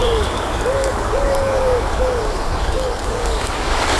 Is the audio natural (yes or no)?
no